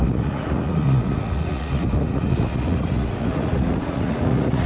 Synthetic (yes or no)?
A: yes